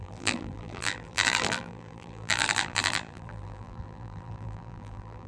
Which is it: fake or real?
fake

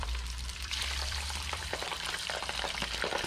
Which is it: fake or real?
fake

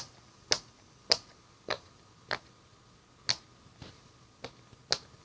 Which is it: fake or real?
real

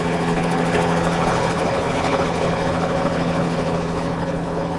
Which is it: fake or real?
fake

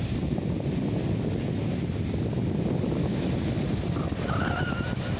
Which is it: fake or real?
real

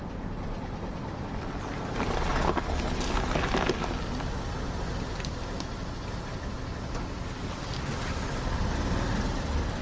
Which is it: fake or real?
real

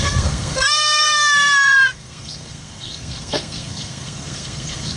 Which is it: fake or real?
fake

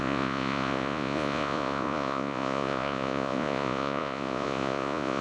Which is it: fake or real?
fake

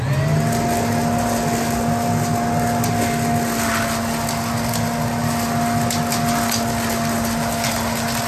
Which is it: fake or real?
real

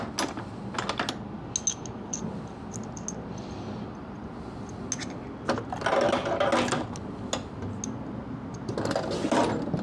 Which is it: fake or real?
real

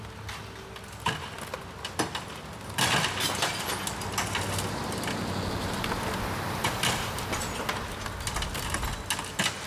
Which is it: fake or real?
real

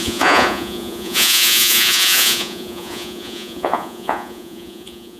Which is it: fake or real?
fake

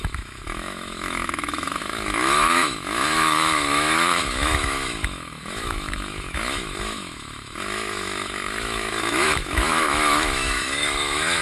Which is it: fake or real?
fake